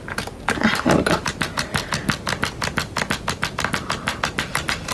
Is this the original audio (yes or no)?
yes